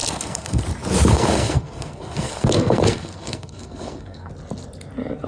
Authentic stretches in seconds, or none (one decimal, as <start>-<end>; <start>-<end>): 0.6-1.1; 4.3-5.3